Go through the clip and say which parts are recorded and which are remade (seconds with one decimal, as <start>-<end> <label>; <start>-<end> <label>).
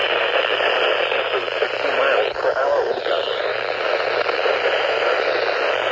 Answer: 0.0-5.9 recorded